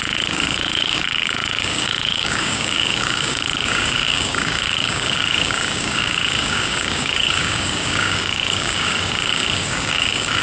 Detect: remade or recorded remade